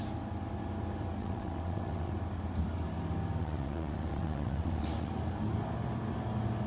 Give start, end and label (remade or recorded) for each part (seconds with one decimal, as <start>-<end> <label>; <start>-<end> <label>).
0.0-1.2 recorded; 1.2-2.1 remade; 2.1-3.4 recorded; 3.4-5.1 remade; 5.1-6.7 recorded